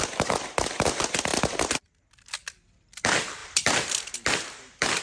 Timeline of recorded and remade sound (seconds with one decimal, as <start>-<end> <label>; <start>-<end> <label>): 0.0-5.0 remade